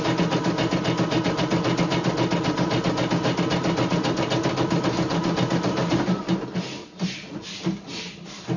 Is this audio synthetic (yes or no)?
no